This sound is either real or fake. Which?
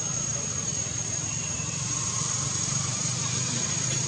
real